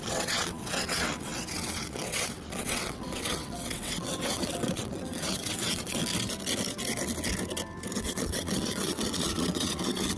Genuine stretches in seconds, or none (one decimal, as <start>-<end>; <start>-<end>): 6.0-7.9